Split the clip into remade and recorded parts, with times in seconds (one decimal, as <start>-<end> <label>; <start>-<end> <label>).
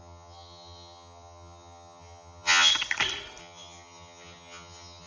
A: 0.0-2.7 remade; 2.7-3.4 recorded; 3.4-5.1 remade